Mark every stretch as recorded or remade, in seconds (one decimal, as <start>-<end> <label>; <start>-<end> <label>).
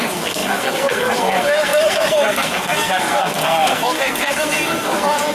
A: 0.0-5.3 remade